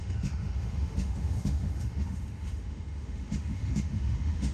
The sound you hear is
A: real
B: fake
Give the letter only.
B